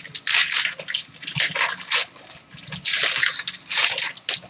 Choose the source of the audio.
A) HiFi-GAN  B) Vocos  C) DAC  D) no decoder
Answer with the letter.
D